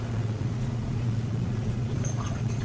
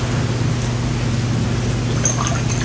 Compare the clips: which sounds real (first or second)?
second